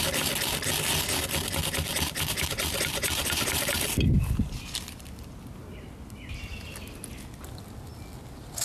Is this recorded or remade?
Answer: recorded